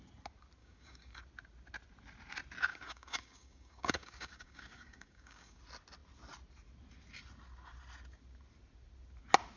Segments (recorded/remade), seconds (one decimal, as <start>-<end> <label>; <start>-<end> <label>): 0.0-0.6 recorded; 0.6-1.2 remade; 1.2-2.7 recorded; 2.7-5.6 remade; 5.6-9.6 recorded